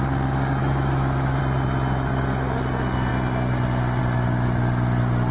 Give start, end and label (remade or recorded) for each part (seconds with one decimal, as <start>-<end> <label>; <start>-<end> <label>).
0.0-0.6 recorded; 0.6-1.4 remade; 1.4-5.3 recorded